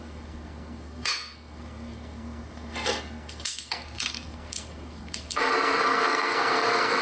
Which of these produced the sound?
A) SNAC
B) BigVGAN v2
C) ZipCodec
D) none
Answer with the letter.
A